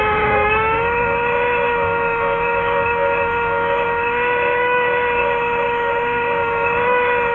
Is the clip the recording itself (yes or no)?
no